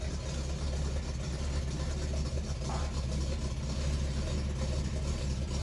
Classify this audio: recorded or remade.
recorded